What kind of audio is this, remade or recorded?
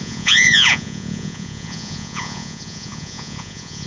remade